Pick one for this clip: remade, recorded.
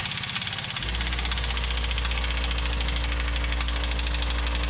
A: recorded